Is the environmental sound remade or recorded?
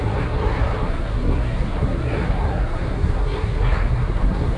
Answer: remade